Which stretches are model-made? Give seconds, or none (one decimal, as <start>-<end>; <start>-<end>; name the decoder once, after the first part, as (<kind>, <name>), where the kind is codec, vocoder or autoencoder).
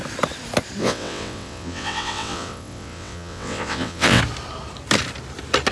0.8-4.2 (vocoder, WaveNeXt)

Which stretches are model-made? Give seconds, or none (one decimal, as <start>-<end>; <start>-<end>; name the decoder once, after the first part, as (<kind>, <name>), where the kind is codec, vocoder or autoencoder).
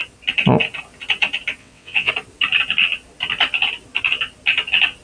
1.6-2.1 (vocoder, WaveNeXt)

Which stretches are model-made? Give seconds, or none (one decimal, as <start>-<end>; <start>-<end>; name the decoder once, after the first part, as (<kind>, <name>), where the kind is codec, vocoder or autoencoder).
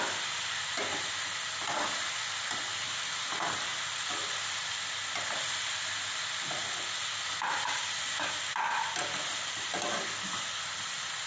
none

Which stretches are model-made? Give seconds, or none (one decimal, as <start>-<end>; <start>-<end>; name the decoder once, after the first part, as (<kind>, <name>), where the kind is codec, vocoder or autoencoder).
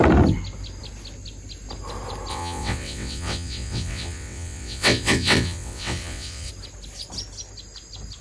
2.3-6.5 (vocoder, WaveNeXt)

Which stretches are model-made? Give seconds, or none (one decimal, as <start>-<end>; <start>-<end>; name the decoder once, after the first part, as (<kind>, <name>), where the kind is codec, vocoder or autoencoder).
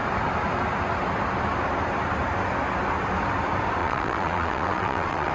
3.8-5.3 (vocoder, WaveNeXt)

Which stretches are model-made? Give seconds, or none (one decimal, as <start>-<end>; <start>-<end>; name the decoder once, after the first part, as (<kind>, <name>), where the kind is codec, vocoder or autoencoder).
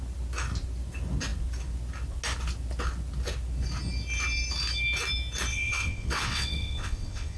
5.5-7.4 (vocoder, WaveNeXt)